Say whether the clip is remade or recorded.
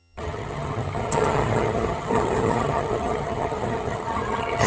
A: remade